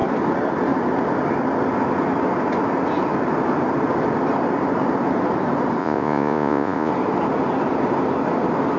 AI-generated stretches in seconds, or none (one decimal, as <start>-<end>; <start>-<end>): 5.8-6.9